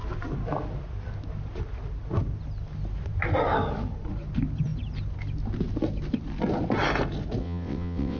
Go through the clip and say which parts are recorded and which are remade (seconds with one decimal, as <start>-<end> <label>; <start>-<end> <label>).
0.0-7.4 recorded; 7.4-8.2 remade